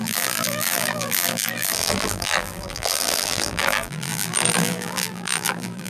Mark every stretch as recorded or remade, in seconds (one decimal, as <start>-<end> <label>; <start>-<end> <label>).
0.0-5.9 remade